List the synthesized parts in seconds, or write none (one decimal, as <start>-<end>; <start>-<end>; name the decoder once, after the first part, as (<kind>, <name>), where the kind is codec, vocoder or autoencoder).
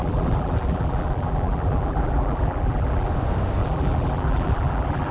0.0-3.1 (vocoder, BigVGAN v2); 3.6-5.1